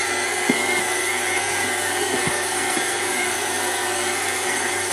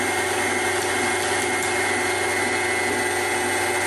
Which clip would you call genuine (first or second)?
second